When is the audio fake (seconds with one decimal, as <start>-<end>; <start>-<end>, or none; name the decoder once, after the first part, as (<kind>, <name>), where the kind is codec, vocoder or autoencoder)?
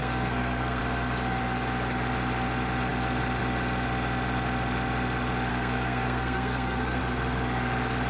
0.0-0.8 (codec, SNAC); 5.5-7.0